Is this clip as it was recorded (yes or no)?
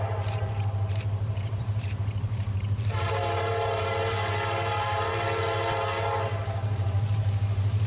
no